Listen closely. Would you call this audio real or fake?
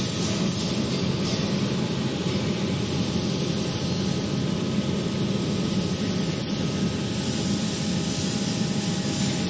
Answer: real